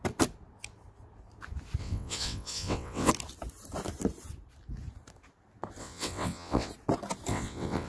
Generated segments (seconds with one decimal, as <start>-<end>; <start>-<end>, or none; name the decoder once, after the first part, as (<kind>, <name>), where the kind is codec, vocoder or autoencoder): 1.8-3.1 (vocoder, WaveNeXt); 5.8-6.7; 7.3-7.9